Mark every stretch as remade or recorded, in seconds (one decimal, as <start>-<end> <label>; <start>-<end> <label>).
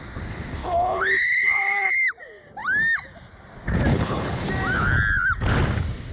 0.0-0.6 recorded; 0.6-1.9 remade; 1.9-3.9 recorded; 3.9-4.4 remade; 4.4-6.1 recorded